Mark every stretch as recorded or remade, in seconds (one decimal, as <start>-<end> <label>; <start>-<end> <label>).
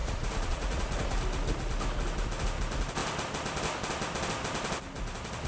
0.0-1.2 remade; 1.2-5.5 recorded